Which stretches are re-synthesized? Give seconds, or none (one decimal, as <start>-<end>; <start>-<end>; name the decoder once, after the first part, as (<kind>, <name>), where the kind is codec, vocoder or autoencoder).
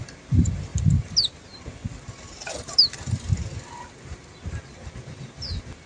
none